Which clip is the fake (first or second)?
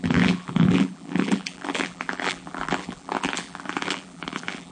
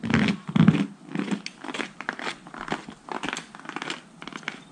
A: first